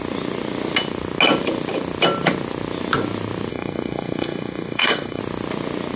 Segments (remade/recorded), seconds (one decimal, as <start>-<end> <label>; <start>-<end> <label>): 0.0-3.5 recorded; 3.5-5.2 remade; 5.2-6.0 recorded